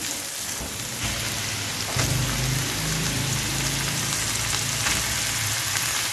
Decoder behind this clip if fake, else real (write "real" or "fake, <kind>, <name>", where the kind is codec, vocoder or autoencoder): real